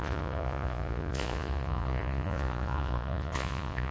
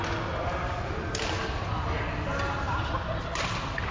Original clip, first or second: second